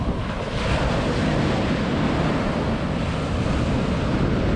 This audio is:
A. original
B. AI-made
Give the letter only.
A